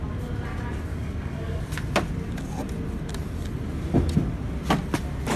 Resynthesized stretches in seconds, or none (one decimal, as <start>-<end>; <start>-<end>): 0.9-1.6